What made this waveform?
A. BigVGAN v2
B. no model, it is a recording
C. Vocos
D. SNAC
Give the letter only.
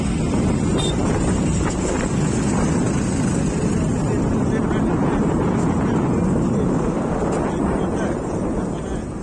B